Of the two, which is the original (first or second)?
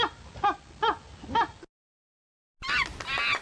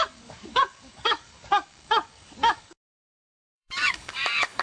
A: first